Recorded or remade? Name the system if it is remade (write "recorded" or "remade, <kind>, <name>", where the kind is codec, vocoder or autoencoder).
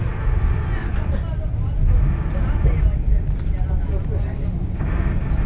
recorded